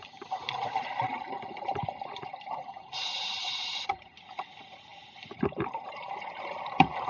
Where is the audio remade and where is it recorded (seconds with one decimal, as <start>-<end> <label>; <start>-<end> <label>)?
0.0-7.1 recorded

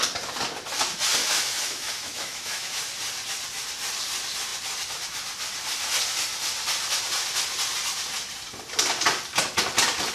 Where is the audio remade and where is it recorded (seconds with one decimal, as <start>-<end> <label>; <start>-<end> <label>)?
0.0-1.2 recorded; 1.2-2.8 remade; 2.8-10.1 recorded

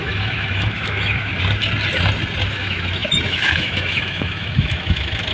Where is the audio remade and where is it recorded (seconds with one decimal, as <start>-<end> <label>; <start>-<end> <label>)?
0.0-1.3 remade; 1.3-2.4 recorded; 2.4-5.3 remade

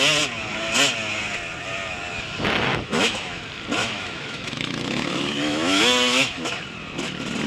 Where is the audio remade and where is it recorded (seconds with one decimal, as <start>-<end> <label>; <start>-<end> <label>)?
0.0-2.7 recorded; 2.7-3.4 remade; 3.4-3.8 recorded; 3.8-6.5 remade; 6.5-7.5 recorded